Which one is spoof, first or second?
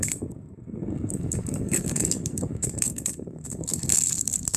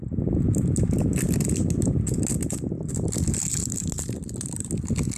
first